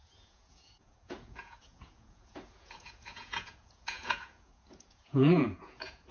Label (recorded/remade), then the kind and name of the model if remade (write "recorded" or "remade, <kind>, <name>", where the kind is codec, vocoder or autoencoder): remade, vocoder, Vocos